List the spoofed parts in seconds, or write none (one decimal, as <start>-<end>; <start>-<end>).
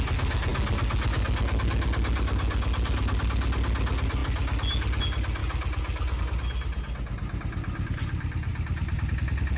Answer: none